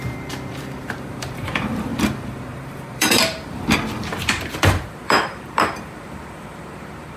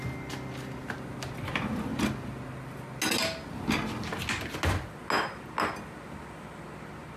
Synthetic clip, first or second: first